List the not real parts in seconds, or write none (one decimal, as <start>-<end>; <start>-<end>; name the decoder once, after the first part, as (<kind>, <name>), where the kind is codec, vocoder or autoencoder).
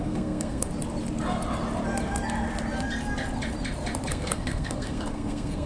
0.0-0.7 (codec, SNAC); 4.1-5.7